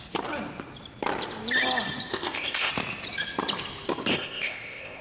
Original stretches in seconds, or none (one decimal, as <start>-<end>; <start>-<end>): 0.0-2.1; 2.7-4.1